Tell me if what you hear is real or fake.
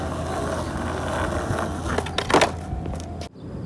real